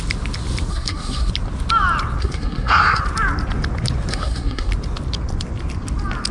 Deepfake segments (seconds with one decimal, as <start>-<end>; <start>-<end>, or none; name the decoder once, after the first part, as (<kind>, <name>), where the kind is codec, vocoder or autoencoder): 0.7-1.3 (codec, SNAC); 2.2-3.0; 4.1-4.7